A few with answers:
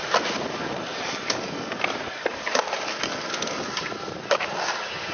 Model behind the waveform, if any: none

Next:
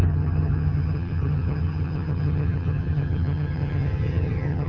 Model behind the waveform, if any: vocoder, HiFi-GAN